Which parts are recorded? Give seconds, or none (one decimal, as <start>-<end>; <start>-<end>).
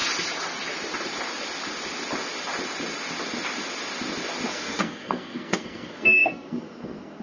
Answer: 0.0-4.5